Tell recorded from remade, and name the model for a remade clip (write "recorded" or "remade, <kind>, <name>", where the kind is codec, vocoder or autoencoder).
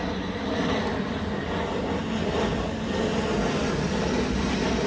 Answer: recorded